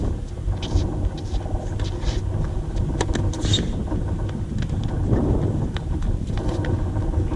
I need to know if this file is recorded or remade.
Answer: recorded